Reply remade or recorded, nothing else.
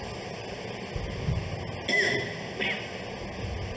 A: recorded